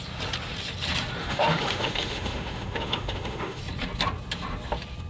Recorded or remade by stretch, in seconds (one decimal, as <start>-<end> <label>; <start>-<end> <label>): 0.0-1.2 recorded; 1.2-3.6 remade; 3.6-5.1 recorded